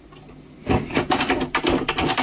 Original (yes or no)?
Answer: yes